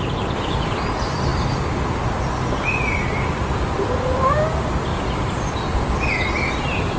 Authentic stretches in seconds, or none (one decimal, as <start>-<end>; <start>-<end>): 0.0-7.0